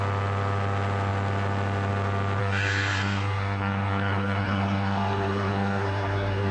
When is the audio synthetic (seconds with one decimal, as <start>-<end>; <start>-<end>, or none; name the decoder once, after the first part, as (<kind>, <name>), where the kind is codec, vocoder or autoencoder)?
2.4-6.5 (codec, SNAC)